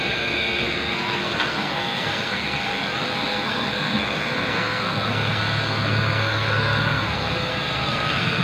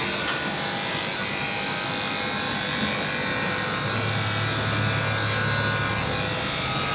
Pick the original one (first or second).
second